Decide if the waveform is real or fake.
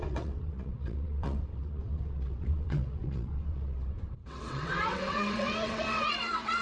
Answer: fake